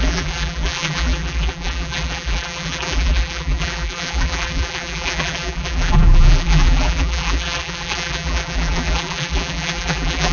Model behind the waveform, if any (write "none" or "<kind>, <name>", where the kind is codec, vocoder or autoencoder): vocoder, BigVGAN v2